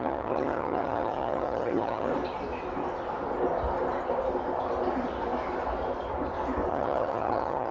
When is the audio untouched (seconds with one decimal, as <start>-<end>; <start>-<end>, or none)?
2.1-6.7